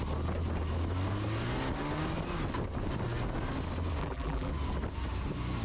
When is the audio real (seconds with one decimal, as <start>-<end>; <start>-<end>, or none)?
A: 0.0-4.0; 4.5-5.6